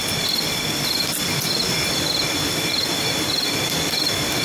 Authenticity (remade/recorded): recorded